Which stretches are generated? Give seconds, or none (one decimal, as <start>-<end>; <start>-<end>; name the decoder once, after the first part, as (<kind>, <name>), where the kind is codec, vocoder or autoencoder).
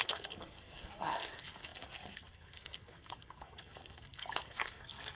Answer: 0.0-5.1 (codec, SNAC)